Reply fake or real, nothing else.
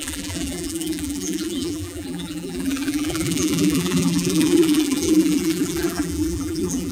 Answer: fake